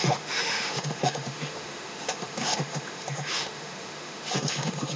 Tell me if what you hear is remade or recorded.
remade